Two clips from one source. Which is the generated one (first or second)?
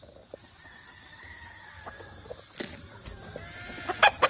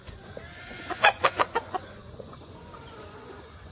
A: second